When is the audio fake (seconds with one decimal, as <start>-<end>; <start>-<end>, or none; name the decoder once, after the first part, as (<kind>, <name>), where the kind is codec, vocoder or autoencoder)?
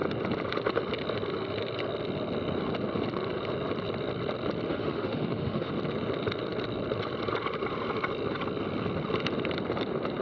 4.7-5.7 (autoencoder, DAC-VAE)